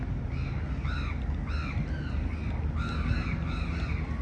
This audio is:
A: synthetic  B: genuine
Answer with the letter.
B